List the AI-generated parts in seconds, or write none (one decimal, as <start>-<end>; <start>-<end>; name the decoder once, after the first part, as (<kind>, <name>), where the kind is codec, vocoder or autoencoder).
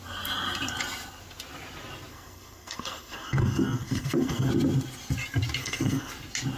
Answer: 2.1-4.5 (codec, SNAC); 5.6-6.1